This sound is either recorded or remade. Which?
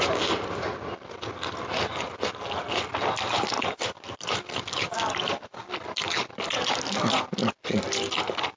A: recorded